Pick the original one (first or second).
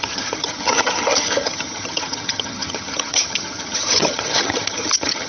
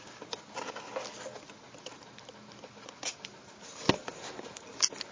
second